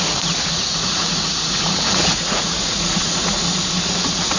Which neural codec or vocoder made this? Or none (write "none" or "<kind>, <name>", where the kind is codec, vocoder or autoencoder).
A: vocoder, Vocos